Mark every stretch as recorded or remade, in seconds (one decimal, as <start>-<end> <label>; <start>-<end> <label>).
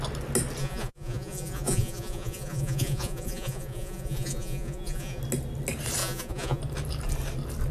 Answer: 0.0-0.6 recorded; 0.6-5.2 remade; 5.2-6.0 recorded; 6.0-6.6 remade; 6.6-7.7 recorded